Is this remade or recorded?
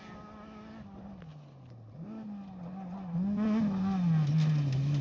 recorded